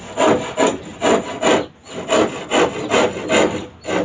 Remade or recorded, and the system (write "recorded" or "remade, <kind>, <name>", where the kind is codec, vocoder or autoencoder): recorded